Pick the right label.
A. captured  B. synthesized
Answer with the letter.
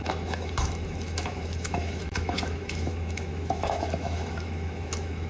B